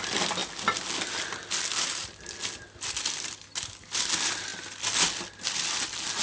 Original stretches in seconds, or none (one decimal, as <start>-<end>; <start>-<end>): 0.0-6.2